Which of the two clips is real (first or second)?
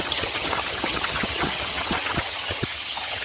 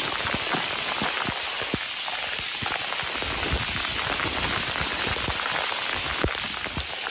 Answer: second